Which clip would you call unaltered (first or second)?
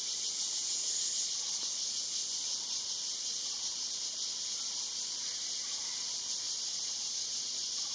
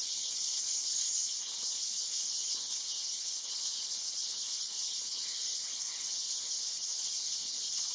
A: first